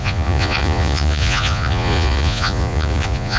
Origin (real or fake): fake